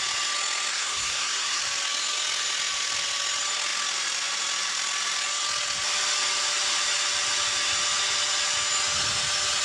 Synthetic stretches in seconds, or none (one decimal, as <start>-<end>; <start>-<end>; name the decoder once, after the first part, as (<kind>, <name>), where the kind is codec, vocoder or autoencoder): 0.7-1.6 (codec, SNAC)

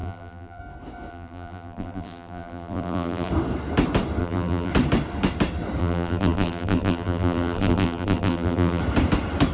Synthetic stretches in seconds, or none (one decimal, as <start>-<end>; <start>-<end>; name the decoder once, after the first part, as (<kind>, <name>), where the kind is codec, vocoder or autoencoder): 0.0-0.6 (vocoder, BigVGAN v2); 1.1-3.3; 4.2-4.7; 5.8-8.8

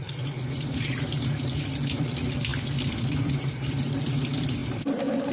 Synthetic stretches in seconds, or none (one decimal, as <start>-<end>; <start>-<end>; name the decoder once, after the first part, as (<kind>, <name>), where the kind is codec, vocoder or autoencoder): 0.0-5.3 (vocoder, BigVGAN v2)

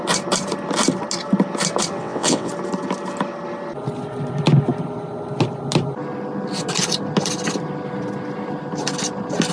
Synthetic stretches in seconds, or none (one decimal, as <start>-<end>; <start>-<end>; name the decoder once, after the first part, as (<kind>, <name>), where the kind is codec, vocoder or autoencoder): 2.0-2.5 (vocoder, WaveNeXt)

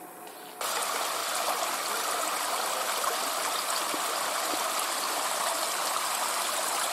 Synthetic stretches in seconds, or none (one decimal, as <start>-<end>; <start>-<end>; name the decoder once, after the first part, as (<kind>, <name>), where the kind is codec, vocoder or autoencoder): none